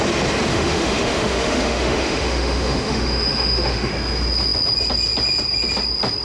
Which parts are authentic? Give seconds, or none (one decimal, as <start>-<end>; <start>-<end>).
0.0-0.5; 3.9-6.2